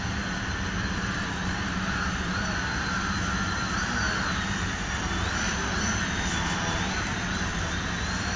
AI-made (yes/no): yes